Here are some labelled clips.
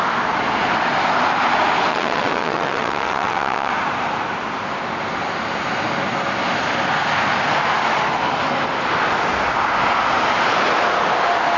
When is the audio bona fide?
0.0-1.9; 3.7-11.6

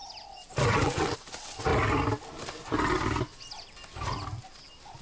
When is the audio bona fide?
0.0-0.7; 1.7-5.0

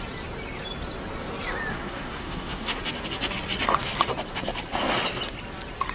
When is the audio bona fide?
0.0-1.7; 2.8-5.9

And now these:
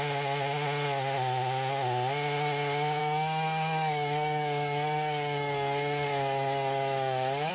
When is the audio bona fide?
0.0-3.0

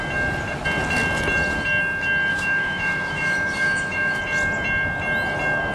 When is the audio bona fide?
0.0-2.3; 4.2-5.7

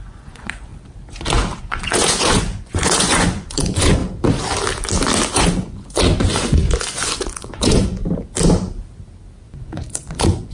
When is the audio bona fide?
0.7-1.6; 4.0-5.3; 8.0-9.6

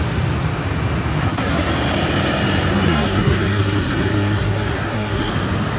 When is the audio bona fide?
0.0-1.2; 1.7-2.7; 5.3-5.8